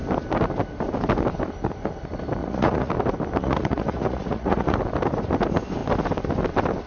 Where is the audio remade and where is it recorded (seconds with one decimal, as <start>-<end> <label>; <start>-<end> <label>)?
0.0-2.4 recorded; 2.4-2.9 remade; 2.9-3.4 recorded; 3.4-4.8 remade; 4.8-6.9 recorded